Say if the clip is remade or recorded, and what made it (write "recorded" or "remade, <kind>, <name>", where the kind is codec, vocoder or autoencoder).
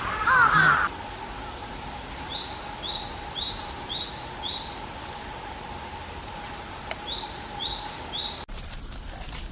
recorded